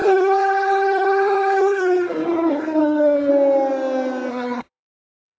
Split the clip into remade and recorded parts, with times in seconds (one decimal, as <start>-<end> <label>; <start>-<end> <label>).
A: 0.0-3.3 remade; 3.3-4.3 recorded; 4.3-5.4 remade